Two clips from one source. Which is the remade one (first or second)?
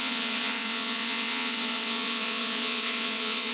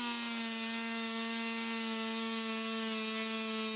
first